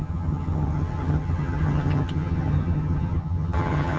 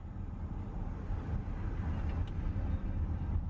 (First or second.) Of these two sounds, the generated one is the first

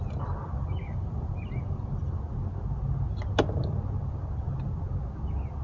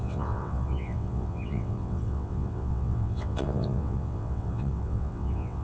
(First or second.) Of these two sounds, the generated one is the second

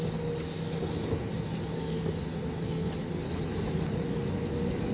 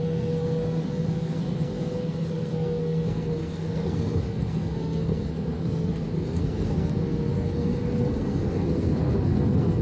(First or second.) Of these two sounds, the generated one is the second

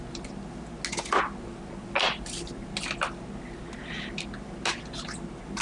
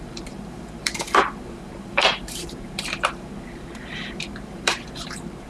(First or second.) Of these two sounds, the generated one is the second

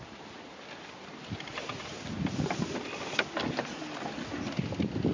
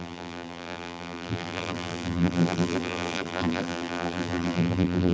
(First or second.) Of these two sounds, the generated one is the second